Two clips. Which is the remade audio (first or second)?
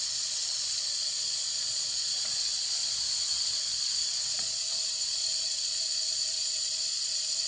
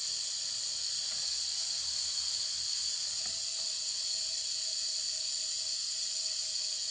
first